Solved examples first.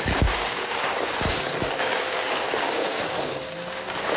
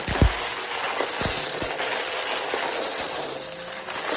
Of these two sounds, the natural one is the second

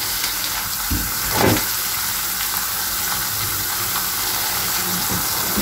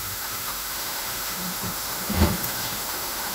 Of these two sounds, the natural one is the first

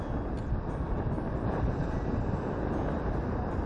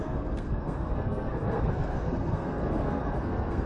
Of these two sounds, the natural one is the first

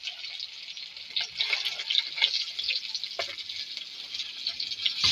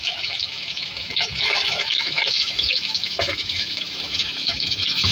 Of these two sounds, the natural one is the first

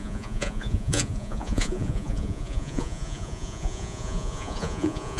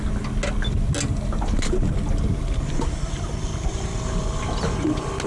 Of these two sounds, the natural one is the second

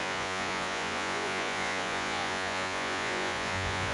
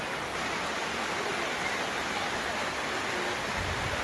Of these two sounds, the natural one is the second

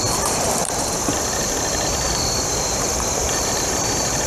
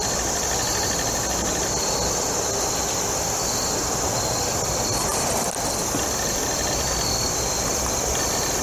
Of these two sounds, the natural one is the second